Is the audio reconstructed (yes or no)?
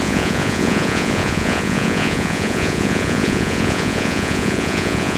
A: yes